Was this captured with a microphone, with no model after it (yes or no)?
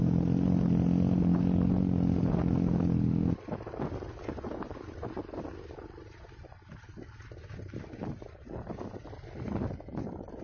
yes